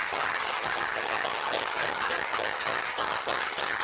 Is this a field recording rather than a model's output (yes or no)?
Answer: no